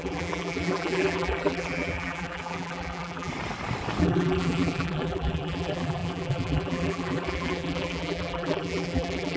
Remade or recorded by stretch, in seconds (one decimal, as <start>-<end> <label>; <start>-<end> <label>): 0.0-3.3 remade; 3.3-4.0 recorded; 4.0-9.4 remade